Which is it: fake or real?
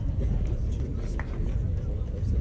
real